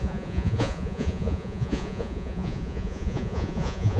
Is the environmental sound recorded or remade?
remade